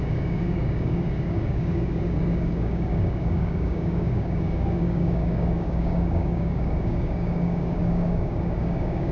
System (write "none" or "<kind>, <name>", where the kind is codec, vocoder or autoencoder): codec, DAC